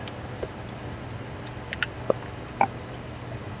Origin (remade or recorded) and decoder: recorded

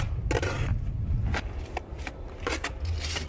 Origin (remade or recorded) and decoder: recorded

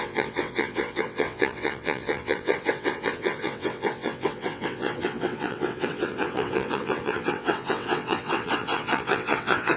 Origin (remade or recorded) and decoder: remade, vocoder, WaveNeXt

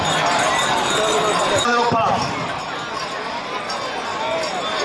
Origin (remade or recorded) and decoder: recorded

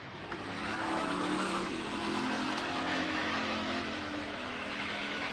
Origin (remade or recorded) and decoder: remade, autoencoder, DAC-VAE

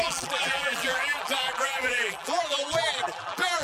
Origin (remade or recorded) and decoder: remade, vocoder, BigVGAN v2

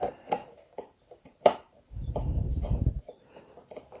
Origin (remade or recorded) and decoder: remade, vocoder, BigVGAN v2